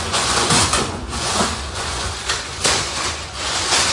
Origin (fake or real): fake